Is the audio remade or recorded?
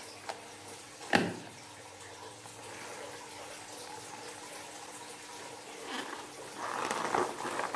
recorded